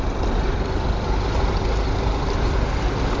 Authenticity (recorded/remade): recorded